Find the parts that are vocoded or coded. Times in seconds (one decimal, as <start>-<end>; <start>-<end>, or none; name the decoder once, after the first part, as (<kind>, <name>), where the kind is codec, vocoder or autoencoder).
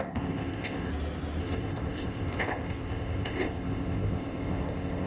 0.0-0.9 (codec, ZipCodec); 1.4-5.1